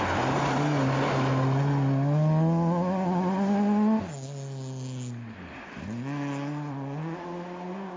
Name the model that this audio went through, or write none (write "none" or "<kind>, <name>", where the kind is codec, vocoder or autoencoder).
none